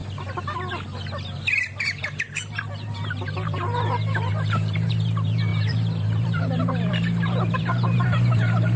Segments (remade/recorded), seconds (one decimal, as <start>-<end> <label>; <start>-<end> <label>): 0.0-1.8 recorded; 1.8-8.8 remade

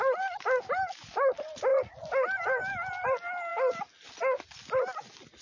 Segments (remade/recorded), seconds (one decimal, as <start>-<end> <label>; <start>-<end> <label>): 0.0-5.4 recorded